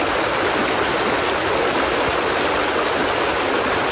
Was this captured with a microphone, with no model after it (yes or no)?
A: yes